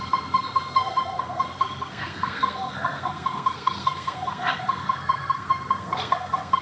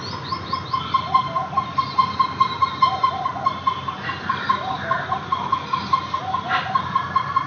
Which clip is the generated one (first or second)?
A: first